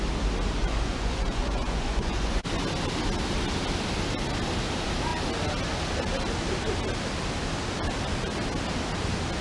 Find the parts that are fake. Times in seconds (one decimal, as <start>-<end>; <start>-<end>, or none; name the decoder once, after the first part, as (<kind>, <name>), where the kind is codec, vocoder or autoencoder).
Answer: 0.6-2.4 (vocoder, Vocos)